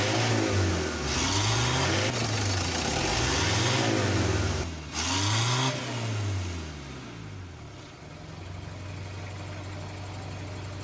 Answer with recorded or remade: recorded